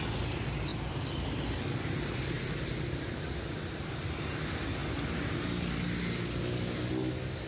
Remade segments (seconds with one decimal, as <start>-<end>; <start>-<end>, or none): none